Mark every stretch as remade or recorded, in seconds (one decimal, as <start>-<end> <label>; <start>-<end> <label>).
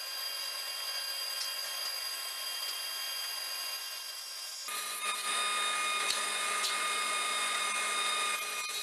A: 0.0-5.4 remade; 5.4-6.0 recorded; 6.0-8.8 remade